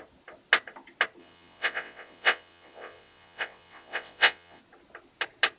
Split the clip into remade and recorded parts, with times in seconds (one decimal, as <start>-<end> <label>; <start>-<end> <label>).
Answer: 0.0-1.2 recorded; 1.2-4.6 remade; 4.6-5.6 recorded